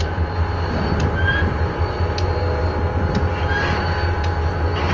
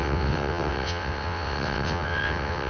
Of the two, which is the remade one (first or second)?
second